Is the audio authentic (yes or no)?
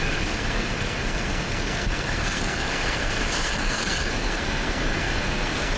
no